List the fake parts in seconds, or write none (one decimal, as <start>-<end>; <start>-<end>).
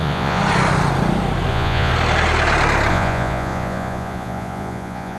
0.0-0.4; 1.5-1.9; 2.9-5.2